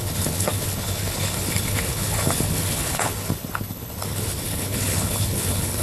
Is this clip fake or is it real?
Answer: fake